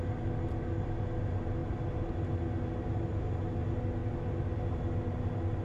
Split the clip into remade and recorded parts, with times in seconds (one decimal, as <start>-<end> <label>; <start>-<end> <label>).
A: 0.0-5.6 recorded